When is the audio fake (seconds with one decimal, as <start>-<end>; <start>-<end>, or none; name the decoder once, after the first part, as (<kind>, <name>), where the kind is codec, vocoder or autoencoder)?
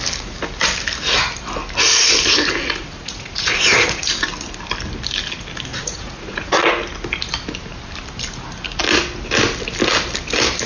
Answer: 2.8-4.1 (vocoder, Vocos); 5.7-6.7